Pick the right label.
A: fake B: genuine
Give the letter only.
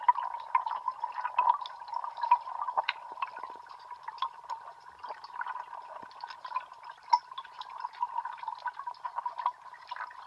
B